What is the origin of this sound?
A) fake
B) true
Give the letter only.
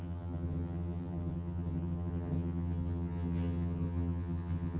A